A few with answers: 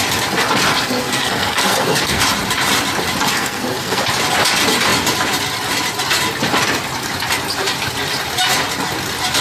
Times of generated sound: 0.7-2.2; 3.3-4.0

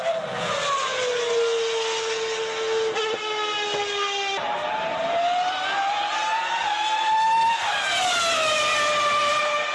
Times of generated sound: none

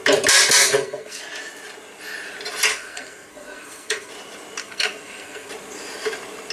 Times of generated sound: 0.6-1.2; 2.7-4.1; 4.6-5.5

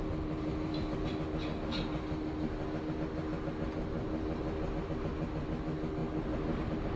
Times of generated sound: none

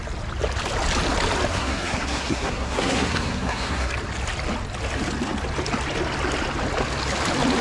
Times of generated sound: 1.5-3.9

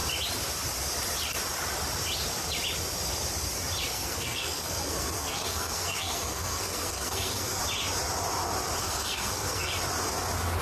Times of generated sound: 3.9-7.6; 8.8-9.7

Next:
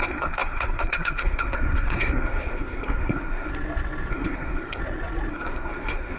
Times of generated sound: 0.0-3.5; 4.1-4.8; 5.3-6.2